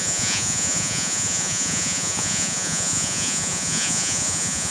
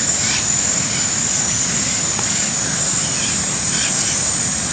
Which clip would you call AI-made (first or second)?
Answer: first